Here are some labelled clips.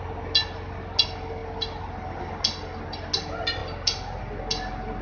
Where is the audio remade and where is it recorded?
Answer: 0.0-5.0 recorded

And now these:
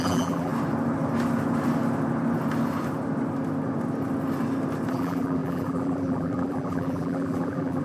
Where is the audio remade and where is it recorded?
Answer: 0.0-0.5 remade; 0.5-4.9 recorded; 4.9-7.8 remade

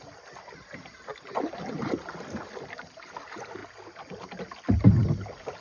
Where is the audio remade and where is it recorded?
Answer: 0.0-5.6 recorded

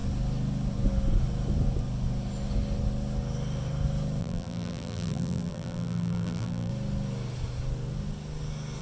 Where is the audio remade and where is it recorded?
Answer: 0.0-4.2 recorded; 4.2-6.7 remade; 6.7-8.8 recorded

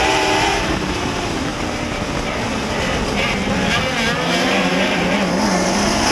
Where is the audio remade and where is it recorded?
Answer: 0.0-1.5 remade; 1.5-4.7 recorded; 4.7-6.1 remade